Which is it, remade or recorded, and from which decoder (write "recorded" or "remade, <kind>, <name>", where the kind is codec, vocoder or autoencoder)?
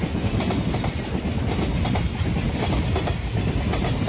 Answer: recorded